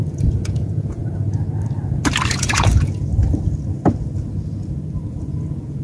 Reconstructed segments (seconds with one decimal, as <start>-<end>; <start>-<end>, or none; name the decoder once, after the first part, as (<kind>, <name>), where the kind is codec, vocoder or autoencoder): 0.0-1.0 (vocoder, Vocos); 2.3-3.1; 5.1-5.8